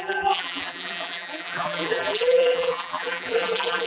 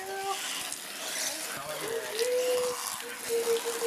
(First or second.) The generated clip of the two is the first